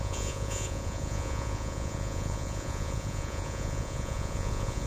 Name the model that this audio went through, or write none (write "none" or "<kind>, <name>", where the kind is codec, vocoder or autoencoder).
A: vocoder, Vocos